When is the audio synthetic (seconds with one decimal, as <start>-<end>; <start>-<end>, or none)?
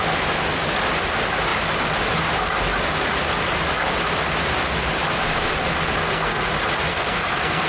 6.0-6.5; 6.9-7.7